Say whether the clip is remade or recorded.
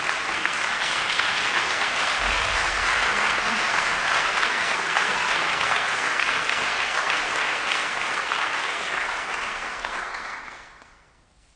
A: remade